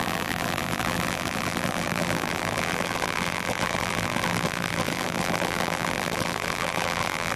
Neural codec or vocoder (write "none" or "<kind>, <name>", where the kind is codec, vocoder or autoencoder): vocoder, BigVGAN v2